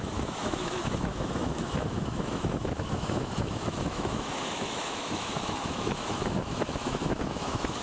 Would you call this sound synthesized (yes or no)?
yes